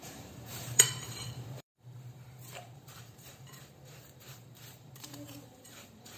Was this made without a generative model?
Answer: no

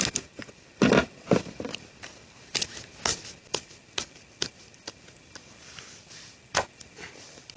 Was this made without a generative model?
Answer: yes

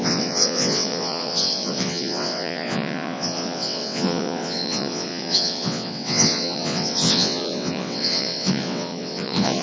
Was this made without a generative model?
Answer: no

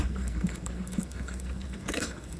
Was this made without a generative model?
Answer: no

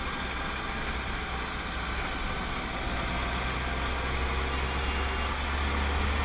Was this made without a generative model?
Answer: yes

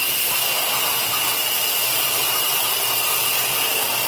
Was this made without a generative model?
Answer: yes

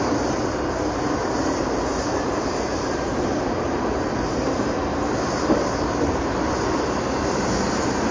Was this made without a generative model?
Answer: no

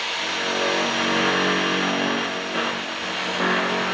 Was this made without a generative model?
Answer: yes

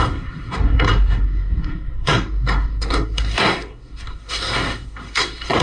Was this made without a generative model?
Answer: no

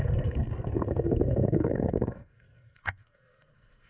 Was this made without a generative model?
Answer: no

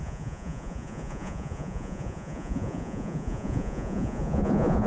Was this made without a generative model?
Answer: no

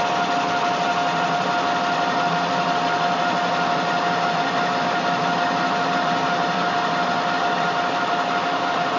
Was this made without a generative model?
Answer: yes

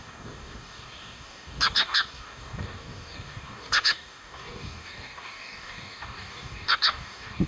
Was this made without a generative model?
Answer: no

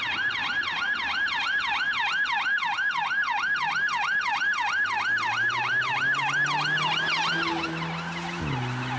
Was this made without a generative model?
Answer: yes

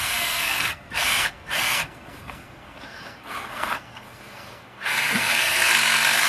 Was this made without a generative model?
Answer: no